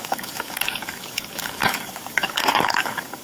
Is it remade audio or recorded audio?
remade